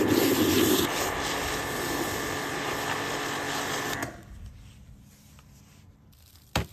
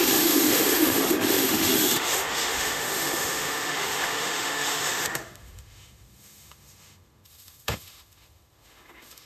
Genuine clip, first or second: first